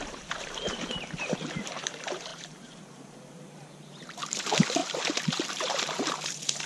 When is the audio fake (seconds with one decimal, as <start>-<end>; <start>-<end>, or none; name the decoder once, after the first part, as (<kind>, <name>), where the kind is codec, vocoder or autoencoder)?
0.0-6.7 (vocoder, BigVGAN v2)